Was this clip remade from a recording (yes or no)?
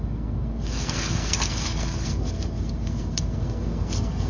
yes